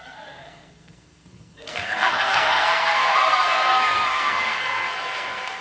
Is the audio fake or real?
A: fake